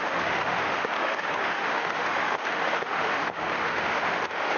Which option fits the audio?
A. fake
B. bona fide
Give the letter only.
A